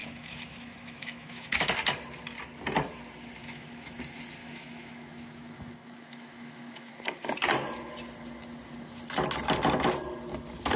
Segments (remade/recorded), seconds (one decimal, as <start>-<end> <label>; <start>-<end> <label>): 0.0-1.7 remade; 1.7-3.4 recorded; 3.4-4.0 remade; 4.0-4.4 recorded; 4.4-6.9 remade; 6.9-10.8 recorded